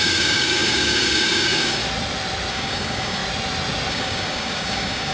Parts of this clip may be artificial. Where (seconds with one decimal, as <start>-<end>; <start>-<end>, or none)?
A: 0.0-1.8; 2.5-3.2; 3.9-5.1